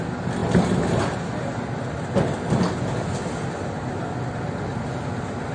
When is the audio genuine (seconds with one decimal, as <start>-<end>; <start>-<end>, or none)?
0.0-5.5

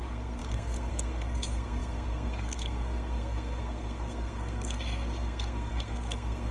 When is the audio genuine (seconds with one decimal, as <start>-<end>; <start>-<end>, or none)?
none

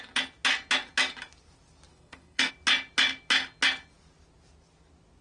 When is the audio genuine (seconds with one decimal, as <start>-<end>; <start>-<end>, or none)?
0.0-1.9; 2.5-5.2

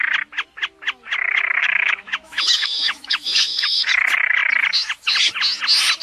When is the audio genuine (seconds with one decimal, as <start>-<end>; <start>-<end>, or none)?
0.0-1.6; 3.9-6.0